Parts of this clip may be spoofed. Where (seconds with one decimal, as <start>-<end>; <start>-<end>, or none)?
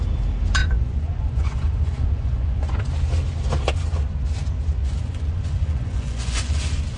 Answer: 0.6-2.9; 4.8-6.6